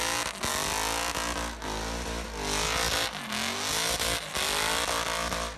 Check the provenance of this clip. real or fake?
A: real